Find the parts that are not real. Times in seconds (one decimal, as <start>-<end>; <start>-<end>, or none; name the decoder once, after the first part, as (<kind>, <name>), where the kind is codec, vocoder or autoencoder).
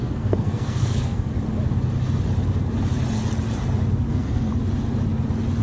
0.0-1.3 (codec, SNAC); 4.1-4.5